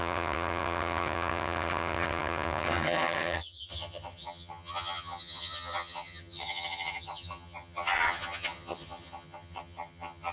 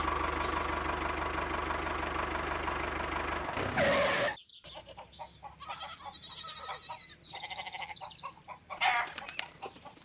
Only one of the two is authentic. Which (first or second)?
second